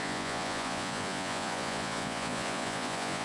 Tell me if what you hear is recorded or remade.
remade